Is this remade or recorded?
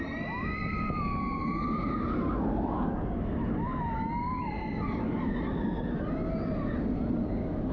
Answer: recorded